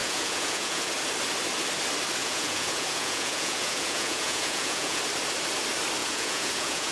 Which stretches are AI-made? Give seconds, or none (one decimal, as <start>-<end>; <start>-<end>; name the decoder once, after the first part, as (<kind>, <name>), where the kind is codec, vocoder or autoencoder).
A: 0.0-0.9 (vocoder, Vocos); 2.2-5.0; 6.0-6.9

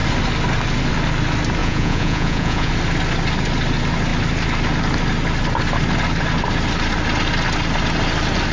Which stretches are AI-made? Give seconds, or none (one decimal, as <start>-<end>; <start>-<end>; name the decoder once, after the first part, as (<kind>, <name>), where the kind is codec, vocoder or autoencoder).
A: 1.6-2.7 (vocoder, Vocos)

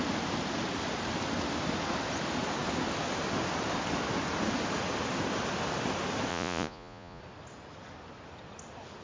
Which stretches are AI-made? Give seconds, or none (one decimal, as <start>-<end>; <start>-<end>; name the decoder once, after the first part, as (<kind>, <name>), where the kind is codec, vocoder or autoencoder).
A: 6.3-7.2 (vocoder, Vocos)